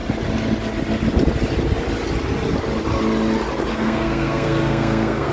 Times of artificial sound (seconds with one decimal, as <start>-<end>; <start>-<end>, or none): 3.7-5.3